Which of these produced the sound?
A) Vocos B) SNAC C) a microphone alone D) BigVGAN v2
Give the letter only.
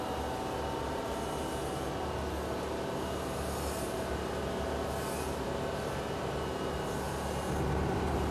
C